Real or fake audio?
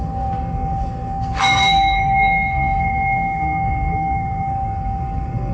fake